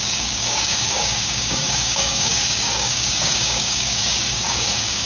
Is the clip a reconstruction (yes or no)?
yes